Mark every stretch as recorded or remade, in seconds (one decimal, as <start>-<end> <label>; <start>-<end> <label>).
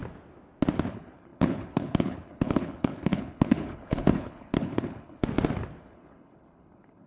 0.0-0.9 recorded; 0.9-5.2 remade; 5.2-5.8 recorded; 5.8-7.1 remade